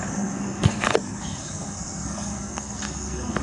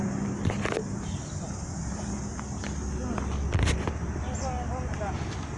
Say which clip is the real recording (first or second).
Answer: second